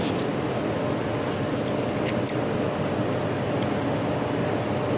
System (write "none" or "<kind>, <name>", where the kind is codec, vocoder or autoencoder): none